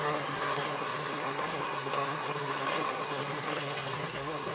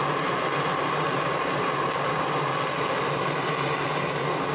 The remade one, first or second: first